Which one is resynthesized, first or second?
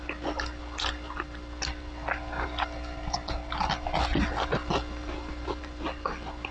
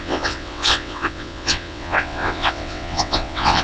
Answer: second